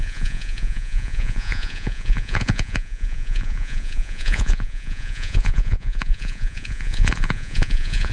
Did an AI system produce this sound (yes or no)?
yes